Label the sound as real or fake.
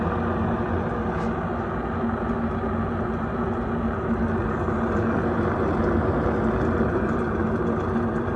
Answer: real